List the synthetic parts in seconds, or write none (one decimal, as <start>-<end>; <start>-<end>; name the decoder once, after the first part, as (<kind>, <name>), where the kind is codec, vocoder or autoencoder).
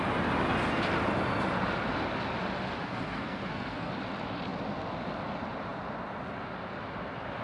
2.8-3.9 (codec, SNAC)